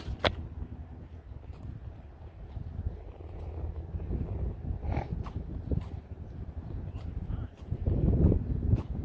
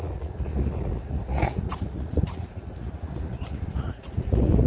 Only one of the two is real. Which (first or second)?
first